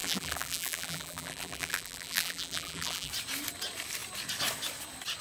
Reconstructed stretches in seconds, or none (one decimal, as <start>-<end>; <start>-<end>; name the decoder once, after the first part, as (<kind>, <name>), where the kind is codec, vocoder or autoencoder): 0.0-3.1 (vocoder, BigVGAN v2)